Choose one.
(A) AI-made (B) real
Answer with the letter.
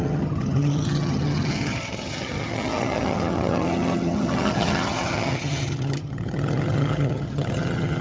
A